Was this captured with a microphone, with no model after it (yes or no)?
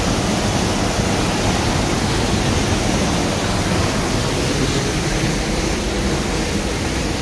yes